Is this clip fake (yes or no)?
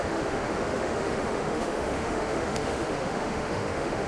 yes